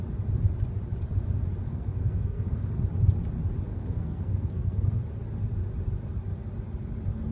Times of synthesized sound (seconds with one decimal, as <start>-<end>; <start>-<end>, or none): 1.7-2.7; 3.7-5.0

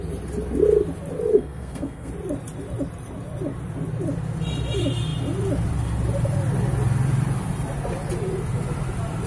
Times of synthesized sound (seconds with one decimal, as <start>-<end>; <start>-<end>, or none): 1.3-2.1

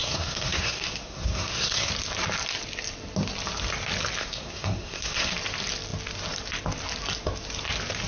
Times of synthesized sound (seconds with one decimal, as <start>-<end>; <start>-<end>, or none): 0.0-1.9; 4.2-5.3

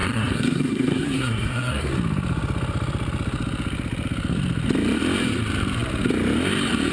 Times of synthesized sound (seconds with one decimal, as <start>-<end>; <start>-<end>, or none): 0.0-1.9

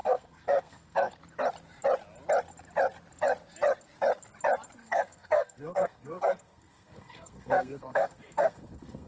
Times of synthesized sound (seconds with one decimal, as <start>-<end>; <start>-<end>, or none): 0.0-1.1; 4.8-9.1

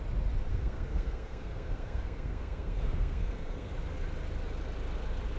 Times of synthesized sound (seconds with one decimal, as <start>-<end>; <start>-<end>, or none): 0.5-3.7